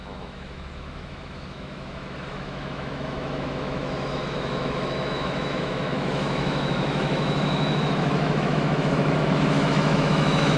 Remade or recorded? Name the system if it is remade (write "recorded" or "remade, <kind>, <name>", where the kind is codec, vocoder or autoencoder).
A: remade, autoencoder, DAC-VAE